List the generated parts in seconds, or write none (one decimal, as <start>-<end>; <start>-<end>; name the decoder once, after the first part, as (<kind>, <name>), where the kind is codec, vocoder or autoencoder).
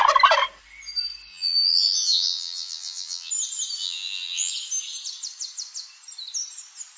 1.3-3.3 (vocoder, BigVGAN v2); 3.8-4.5